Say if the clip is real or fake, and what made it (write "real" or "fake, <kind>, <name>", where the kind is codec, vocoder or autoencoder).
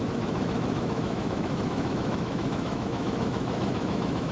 fake, autoencoder, DAC-VAE